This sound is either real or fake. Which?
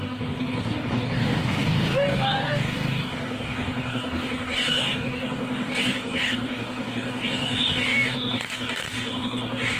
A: fake